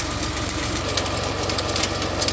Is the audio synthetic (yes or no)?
no